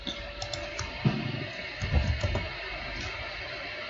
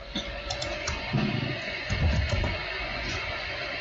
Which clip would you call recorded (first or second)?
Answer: first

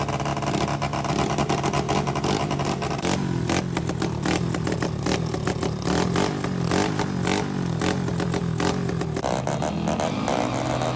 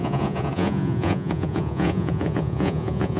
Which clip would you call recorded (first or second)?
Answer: first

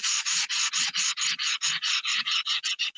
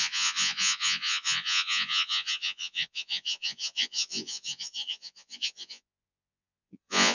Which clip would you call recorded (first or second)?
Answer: first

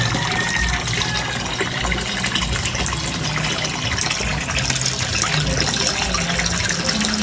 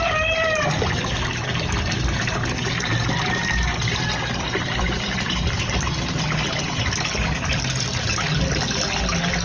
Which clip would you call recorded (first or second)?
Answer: first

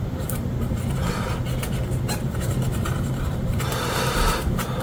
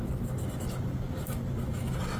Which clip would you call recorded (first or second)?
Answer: second